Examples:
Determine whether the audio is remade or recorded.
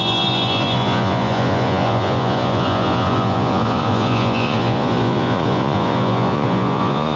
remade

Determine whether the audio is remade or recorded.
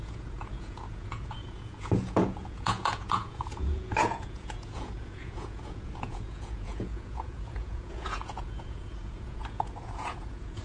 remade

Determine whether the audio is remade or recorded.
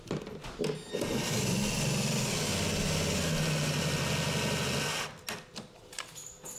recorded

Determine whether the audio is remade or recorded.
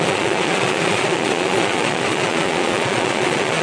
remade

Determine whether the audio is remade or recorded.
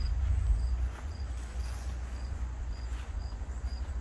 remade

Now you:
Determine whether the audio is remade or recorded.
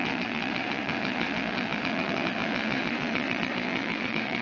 remade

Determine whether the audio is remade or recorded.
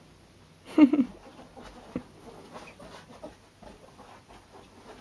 recorded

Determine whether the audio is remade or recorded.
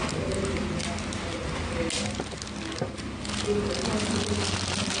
recorded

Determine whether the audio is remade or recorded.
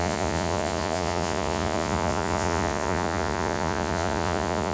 remade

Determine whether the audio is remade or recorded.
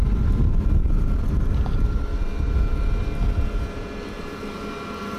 recorded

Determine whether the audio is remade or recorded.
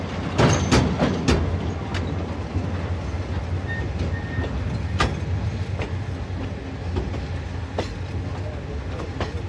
recorded